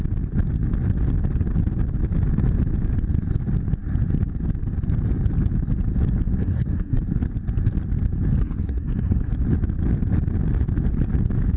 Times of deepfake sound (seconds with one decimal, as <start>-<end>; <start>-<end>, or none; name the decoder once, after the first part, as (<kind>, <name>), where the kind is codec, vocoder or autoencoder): 6.4-7.0 (codec, SNAC); 8.4-9.3